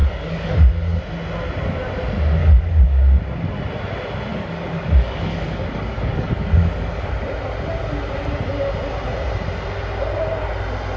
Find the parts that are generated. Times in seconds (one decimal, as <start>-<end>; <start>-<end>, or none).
0.0-1.0; 2.4-3.2; 4.3-7.1